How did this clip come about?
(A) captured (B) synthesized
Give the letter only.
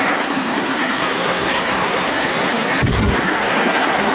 B